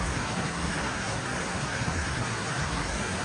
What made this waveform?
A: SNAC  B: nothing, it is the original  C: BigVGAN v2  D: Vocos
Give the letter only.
A